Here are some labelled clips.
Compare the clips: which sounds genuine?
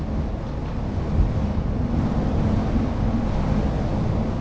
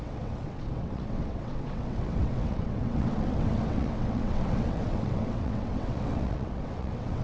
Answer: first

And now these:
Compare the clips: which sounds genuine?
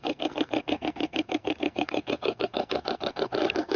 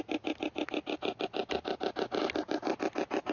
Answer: second